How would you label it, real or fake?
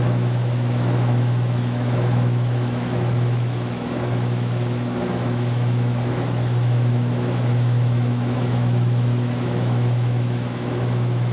fake